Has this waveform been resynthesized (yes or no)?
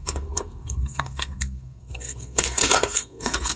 yes